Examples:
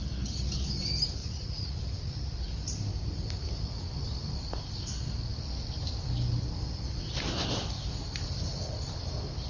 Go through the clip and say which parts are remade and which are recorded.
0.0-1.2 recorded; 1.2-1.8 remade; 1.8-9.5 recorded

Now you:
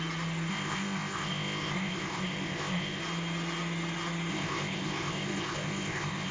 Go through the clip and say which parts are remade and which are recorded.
0.0-0.5 recorded; 0.5-3.0 remade; 3.0-4.3 recorded; 4.3-6.3 remade